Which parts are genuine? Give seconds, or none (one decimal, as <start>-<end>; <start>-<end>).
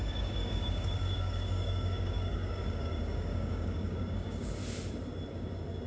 4.6-5.9